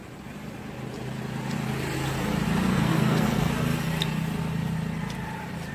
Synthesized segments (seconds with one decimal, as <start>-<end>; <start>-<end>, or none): 2.7-3.5